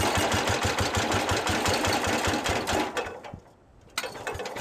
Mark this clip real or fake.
real